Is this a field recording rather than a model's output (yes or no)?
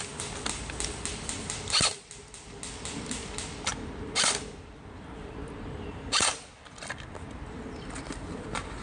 yes